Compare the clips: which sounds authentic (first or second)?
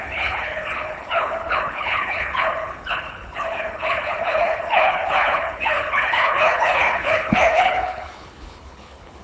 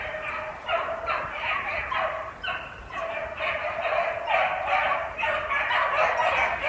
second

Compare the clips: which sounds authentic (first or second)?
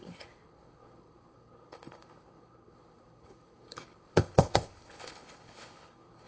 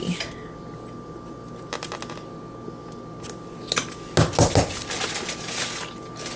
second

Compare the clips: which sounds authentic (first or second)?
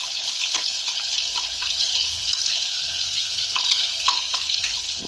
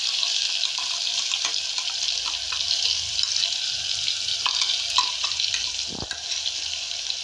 second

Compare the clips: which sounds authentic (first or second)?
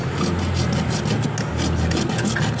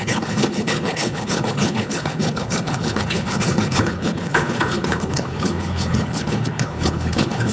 first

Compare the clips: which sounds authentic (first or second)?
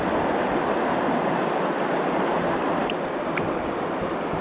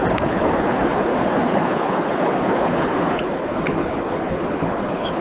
first